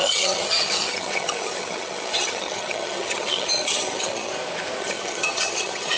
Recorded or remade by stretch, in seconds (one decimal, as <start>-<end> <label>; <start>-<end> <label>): 0.0-4.3 remade; 4.3-4.8 recorded; 4.8-6.0 remade